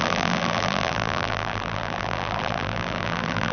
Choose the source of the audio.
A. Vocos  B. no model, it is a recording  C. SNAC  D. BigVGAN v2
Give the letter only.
D